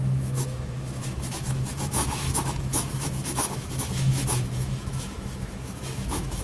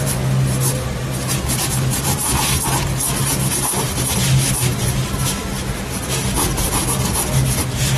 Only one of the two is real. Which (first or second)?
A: second